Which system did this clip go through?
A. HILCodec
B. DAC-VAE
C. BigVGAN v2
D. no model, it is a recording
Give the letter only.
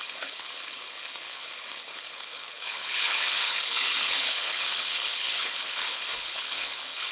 A